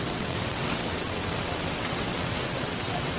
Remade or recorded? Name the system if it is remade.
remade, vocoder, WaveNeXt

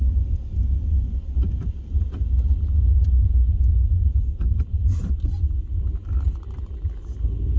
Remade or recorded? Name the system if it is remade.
recorded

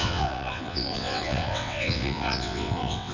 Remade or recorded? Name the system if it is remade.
remade, vocoder, WaveNeXt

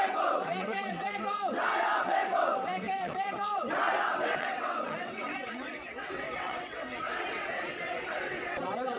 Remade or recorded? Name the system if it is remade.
remade, vocoder, WaveNeXt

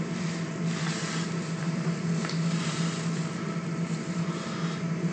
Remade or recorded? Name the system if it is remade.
recorded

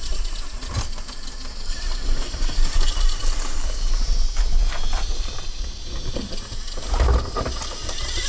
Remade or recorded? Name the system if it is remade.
recorded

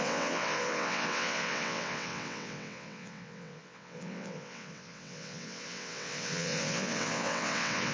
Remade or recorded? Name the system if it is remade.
remade, vocoder, WaveNeXt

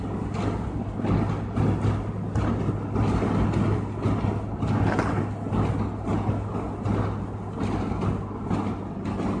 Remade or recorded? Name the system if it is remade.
recorded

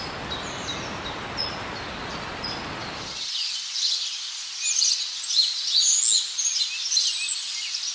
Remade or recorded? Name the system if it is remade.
recorded